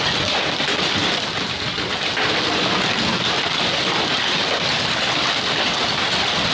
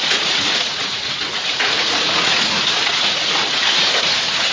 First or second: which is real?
first